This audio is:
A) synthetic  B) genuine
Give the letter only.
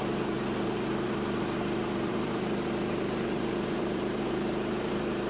A